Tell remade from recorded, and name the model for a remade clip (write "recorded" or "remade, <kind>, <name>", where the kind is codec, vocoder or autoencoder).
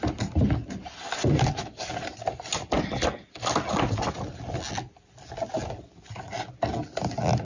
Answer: recorded